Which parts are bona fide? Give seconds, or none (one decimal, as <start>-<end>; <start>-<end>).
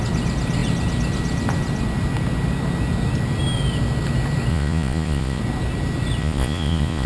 0.0-4.5; 5.4-6.2